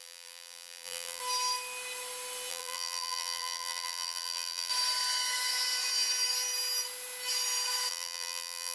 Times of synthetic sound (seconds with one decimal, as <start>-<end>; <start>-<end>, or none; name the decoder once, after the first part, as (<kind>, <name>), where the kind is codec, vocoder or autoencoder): 0.0-1.2 (vocoder, BigVGAN v2); 2.5-4.7; 7.9-8.7